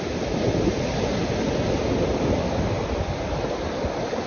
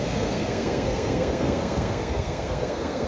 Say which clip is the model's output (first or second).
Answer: second